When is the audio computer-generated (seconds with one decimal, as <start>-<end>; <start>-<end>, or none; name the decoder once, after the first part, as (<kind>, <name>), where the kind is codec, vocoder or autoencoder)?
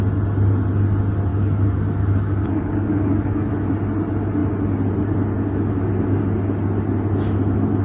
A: 1.3-3.5 (codec, DAC)